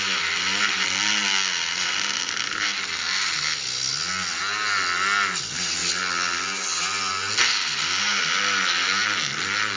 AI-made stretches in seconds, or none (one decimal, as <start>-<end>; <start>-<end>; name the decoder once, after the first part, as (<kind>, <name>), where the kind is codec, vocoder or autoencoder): none